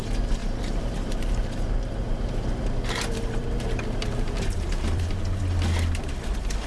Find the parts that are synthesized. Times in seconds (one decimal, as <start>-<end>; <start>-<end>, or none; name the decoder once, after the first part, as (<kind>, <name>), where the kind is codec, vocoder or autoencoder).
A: 0.4-2.6 (vocoder, BigVGAN v2); 3.4-5.4